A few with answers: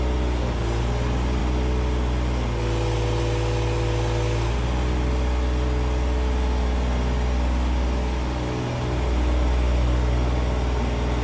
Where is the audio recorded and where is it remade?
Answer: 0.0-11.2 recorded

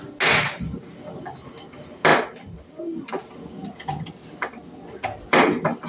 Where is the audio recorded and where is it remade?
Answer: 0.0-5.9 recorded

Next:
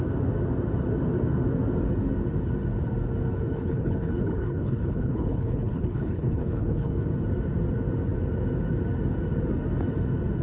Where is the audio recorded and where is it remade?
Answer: 0.0-3.5 recorded; 3.5-6.9 remade; 6.9-10.4 recorded

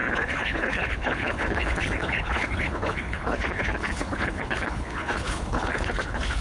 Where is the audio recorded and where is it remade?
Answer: 0.0-6.4 remade

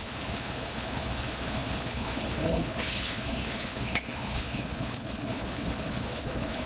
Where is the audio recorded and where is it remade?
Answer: 0.0-6.7 remade

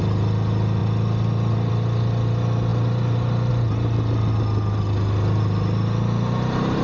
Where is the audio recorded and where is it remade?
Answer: 0.0-6.8 recorded

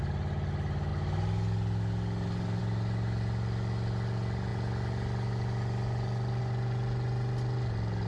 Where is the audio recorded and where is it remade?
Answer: 0.0-8.1 recorded